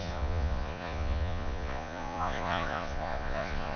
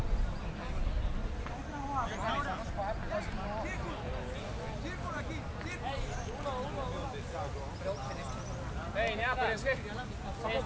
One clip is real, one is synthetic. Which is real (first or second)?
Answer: second